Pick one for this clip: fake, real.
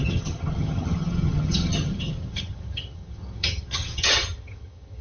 fake